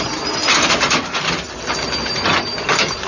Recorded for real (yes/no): yes